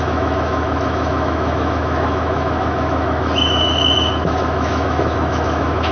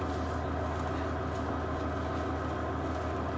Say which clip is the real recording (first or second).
second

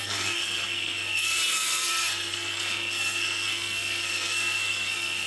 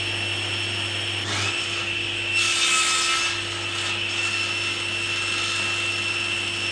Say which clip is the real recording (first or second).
second